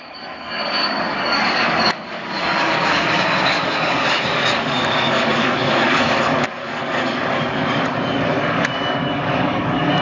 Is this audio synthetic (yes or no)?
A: yes